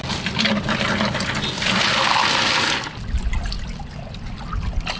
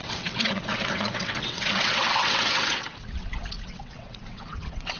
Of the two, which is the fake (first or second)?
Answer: second